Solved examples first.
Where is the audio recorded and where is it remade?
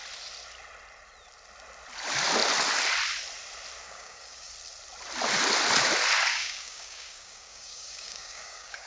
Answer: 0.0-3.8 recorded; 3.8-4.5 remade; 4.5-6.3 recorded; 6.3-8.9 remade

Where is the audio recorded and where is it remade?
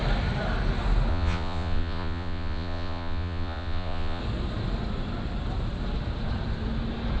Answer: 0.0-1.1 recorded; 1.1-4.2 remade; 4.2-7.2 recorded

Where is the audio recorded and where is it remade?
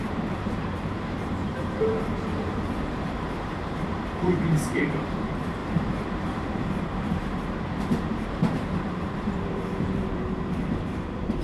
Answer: 0.0-11.4 remade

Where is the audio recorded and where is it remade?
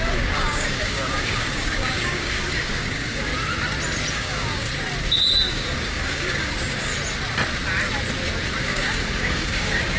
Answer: 0.0-3.3 remade; 3.3-4.1 recorded; 4.1-4.7 remade; 4.7-5.5 recorded; 5.5-6.9 remade; 6.9-8.6 recorded; 8.6-10.0 remade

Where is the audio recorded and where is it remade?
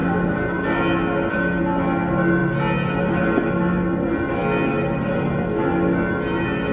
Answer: 0.0-6.7 recorded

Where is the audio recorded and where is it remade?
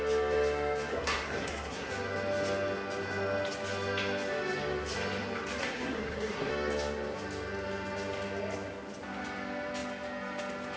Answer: 0.0-0.9 recorded; 0.9-1.9 remade; 1.9-5.6 recorded; 5.6-6.5 remade; 6.5-10.8 recorded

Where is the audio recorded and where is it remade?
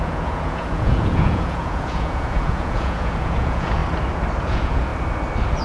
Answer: 0.0-3.8 remade; 3.8-4.4 recorded; 4.4-4.9 remade; 4.9-5.6 recorded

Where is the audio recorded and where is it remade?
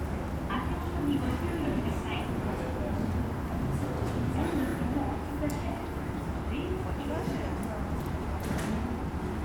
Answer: 0.0-9.4 recorded